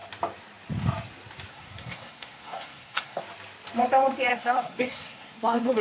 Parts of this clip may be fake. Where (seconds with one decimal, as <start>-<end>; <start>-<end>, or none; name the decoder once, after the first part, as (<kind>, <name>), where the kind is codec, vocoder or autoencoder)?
1.5-3.2 (codec, SNAC); 4.3-5.8